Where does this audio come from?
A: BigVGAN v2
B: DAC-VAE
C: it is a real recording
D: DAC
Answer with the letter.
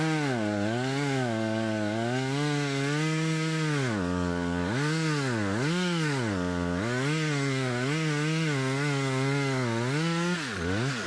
D